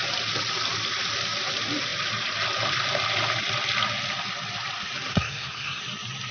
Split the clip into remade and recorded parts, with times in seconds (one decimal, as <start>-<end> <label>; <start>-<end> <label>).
0.0-5.1 recorded; 5.1-5.8 remade; 5.8-6.3 recorded